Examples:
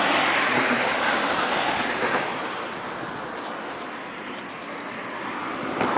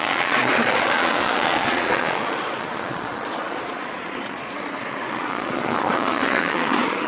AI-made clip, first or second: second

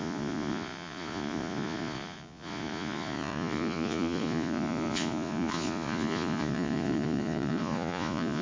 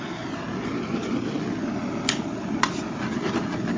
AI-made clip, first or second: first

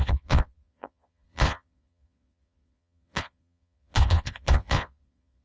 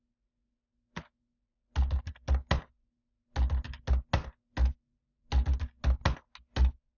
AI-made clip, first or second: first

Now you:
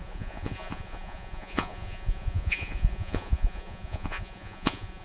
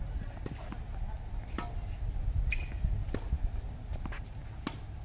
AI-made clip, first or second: first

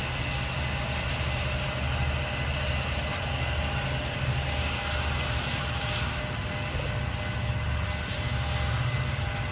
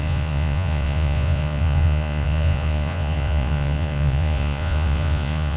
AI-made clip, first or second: second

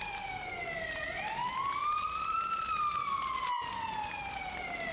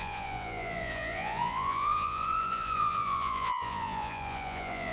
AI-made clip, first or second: second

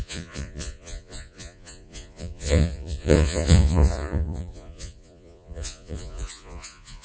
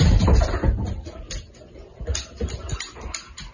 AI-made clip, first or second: first